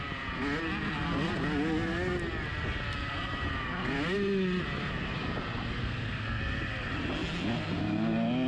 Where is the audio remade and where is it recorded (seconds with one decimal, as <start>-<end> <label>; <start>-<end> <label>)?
0.0-5.8 recorded; 5.8-6.4 remade; 6.4-8.5 recorded